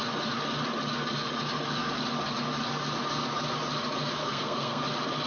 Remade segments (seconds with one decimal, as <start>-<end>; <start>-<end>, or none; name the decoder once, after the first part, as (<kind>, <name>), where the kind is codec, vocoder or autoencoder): 4.2-4.8 (codec, SNAC)